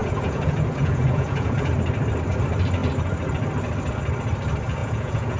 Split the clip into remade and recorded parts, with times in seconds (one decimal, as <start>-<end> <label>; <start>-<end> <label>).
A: 0.0-1.7 remade; 1.7-4.8 recorded; 4.8-5.4 remade